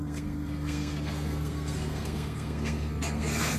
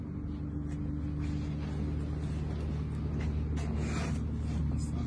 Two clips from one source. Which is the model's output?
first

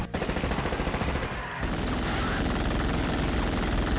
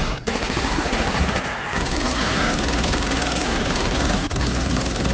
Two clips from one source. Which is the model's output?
second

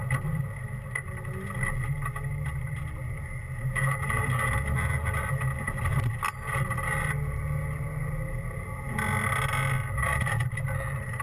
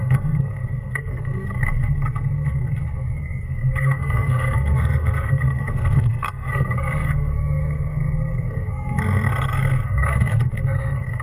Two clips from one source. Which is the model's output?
second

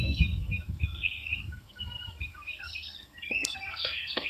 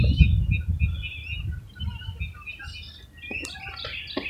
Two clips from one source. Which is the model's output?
first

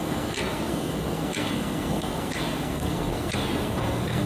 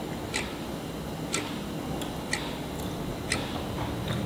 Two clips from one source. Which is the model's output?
first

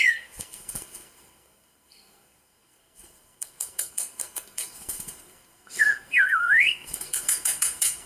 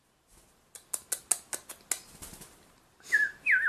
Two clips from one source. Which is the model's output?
first